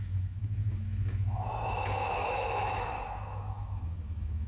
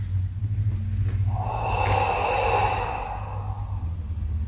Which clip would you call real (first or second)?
second